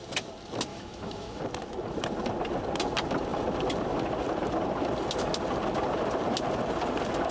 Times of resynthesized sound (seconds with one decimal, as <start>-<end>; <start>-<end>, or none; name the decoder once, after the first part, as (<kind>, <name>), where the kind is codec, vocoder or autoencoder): 0.7-1.4 (autoencoder, DAC-VAE)